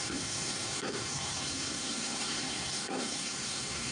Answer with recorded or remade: remade